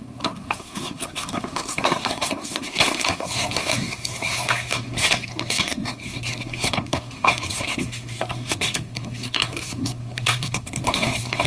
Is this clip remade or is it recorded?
remade